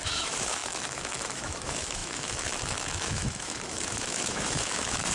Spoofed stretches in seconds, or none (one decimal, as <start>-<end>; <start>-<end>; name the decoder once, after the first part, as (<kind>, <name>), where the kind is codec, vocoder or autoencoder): 0.0-5.1 (autoencoder, DAC-VAE)